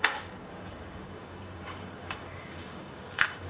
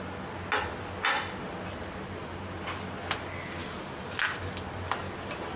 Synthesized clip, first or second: first